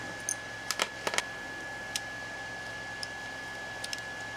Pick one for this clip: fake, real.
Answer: real